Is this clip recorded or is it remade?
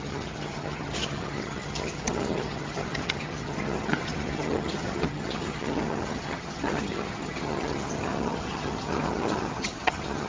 remade